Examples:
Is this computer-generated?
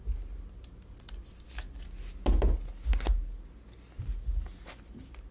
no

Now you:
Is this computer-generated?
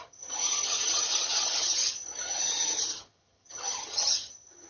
yes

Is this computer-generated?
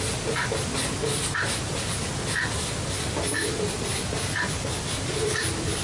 no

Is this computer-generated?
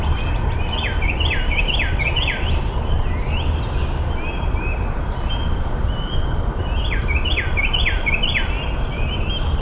no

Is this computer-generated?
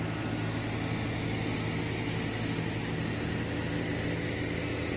no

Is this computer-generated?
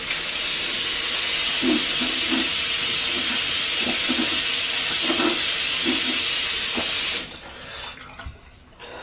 no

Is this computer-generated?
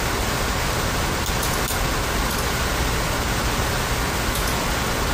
no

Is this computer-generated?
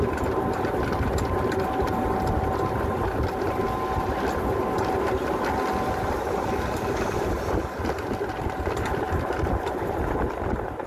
no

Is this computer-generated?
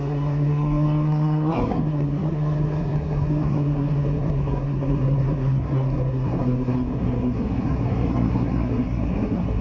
yes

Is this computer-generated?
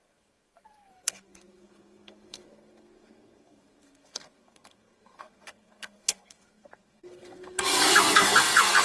yes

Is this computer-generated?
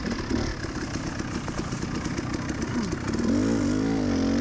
no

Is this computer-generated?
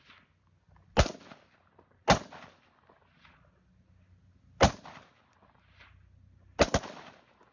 no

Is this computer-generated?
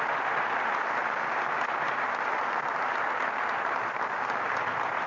no